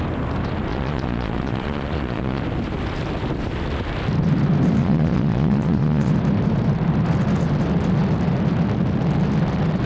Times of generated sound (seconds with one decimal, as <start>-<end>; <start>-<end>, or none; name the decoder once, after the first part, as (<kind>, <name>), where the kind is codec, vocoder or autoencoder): 0.7-2.4 (vocoder, Vocos); 4.8-6.1